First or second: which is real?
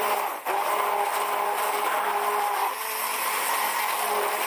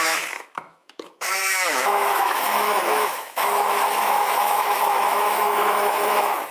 first